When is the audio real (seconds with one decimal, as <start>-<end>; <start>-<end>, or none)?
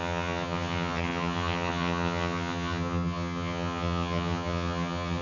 none